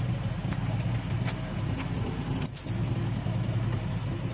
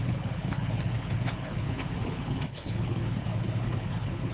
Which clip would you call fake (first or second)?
second